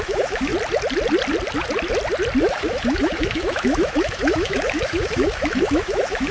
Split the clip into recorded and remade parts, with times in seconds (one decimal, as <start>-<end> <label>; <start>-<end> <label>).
0.0-0.5 remade; 0.5-2.4 recorded; 2.4-6.3 remade